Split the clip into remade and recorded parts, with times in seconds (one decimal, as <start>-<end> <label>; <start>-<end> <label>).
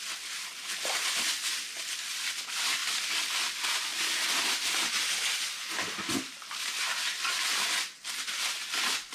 0.0-9.1 recorded